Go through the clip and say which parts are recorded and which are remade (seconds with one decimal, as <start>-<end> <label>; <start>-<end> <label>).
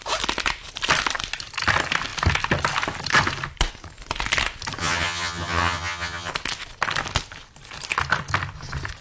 0.0-4.8 recorded; 4.8-6.3 remade; 6.3-9.0 recorded